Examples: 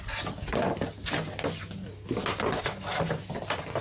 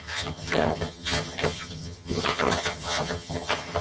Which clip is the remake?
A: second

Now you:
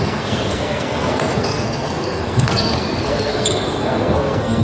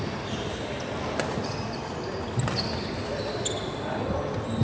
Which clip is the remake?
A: first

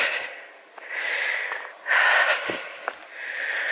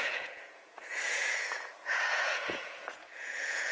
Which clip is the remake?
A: second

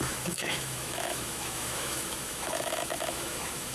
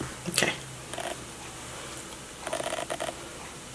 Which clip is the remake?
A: first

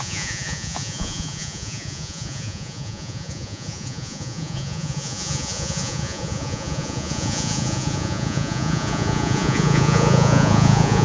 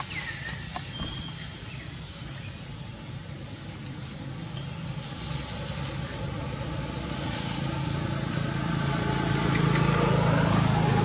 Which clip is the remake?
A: first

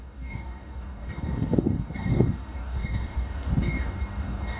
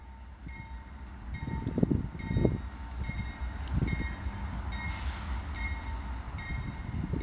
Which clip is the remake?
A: first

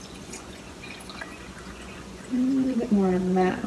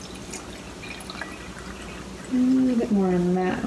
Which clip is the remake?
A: first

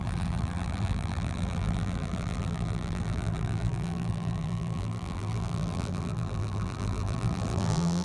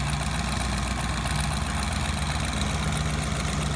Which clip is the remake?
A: first